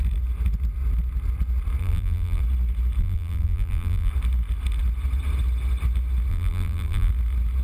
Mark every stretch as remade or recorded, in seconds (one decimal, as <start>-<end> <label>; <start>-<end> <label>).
0.0-1.8 recorded; 1.8-2.4 remade; 2.4-3.0 recorded; 3.0-4.1 remade; 4.1-6.3 recorded; 6.3-7.1 remade; 7.1-7.6 recorded